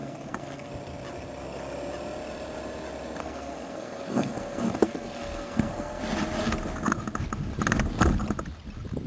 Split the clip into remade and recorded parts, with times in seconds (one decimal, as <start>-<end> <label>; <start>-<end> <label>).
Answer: 0.0-0.7 remade; 0.7-3.2 recorded; 3.2-6.0 remade; 6.0-9.1 recorded

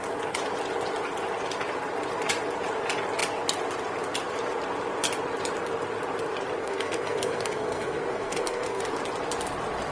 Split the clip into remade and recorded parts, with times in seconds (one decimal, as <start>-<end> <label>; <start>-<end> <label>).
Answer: 0.0-6.6 recorded; 6.6-8.8 remade; 8.8-9.9 recorded

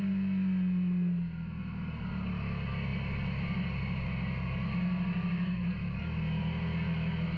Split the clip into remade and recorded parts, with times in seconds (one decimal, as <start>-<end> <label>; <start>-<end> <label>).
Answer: 0.0-7.4 recorded

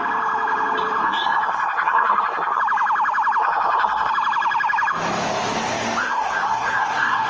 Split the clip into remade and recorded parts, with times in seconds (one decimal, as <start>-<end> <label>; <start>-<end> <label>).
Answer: 0.0-1.0 recorded; 1.0-2.6 remade; 2.6-3.4 recorded; 3.4-4.1 remade; 4.1-6.0 recorded; 6.0-7.3 remade

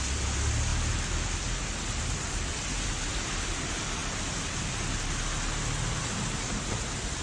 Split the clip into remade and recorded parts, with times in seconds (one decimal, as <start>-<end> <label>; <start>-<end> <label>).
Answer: 0.0-7.2 recorded

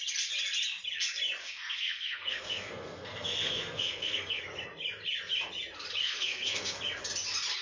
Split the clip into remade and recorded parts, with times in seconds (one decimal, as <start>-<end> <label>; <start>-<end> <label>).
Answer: 0.0-1.4 recorded; 1.4-4.4 remade; 4.4-6.0 recorded; 6.0-6.8 remade; 6.8-7.6 recorded

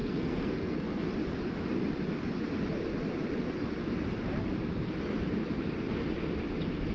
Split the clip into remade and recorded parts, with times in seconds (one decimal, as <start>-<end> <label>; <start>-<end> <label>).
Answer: 0.0-1.1 remade; 1.1-6.9 recorded

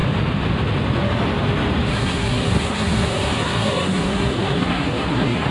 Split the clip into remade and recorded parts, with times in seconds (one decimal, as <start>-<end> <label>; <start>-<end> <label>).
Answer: 0.0-1.9 recorded; 1.9-5.5 remade